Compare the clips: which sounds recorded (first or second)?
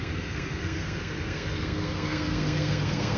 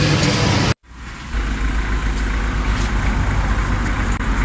second